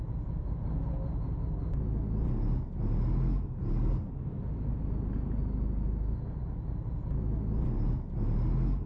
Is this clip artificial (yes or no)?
no